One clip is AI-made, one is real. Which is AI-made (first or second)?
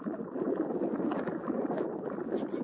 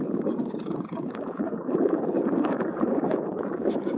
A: second